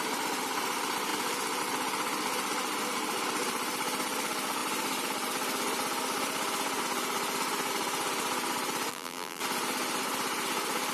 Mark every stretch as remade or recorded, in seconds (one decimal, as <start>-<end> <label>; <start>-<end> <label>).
0.0-8.9 recorded; 8.9-9.4 remade; 9.4-10.9 recorded